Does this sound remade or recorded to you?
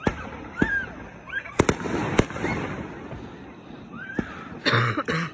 recorded